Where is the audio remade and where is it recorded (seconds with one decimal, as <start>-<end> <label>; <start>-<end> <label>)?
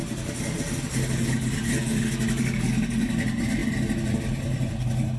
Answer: 0.0-5.2 recorded